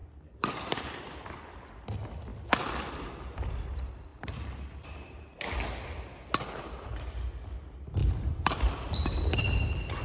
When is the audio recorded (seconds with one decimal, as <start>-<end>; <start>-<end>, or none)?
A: 1.0-4.1; 5.2-8.0; 8.7-10.0